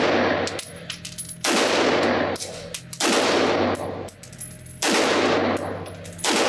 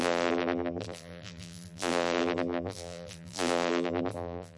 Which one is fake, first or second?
second